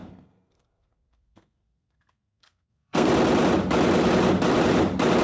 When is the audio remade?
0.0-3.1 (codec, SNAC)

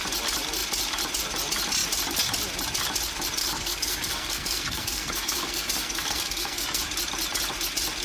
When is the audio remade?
3.4-6.8 (codec, SNAC)

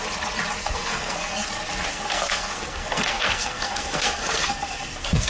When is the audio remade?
0.6-1.5 (codec, SNAC); 1.9-5.3

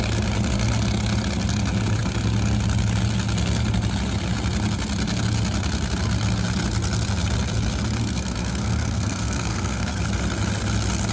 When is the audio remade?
8.0-10.0 (codec, SNAC)

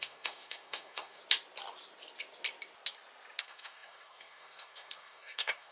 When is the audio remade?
0.0-1.2 (codec, SNAC); 3.4-5.7

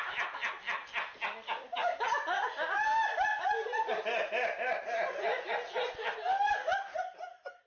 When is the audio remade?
none

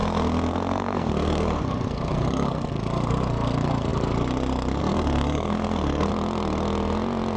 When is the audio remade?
0.0-6.1 (codec, SNAC)

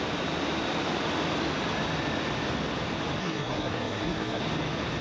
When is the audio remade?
3.2-4.4 (codec, SNAC)